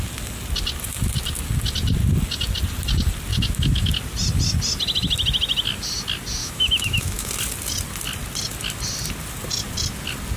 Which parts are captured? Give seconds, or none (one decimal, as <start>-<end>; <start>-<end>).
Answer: 0.0-3.3; 3.9-6.4; 7.3-10.4